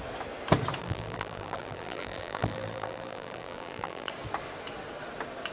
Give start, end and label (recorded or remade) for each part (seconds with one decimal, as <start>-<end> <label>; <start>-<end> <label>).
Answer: 0.0-0.8 recorded; 0.8-4.1 remade; 4.1-5.5 recorded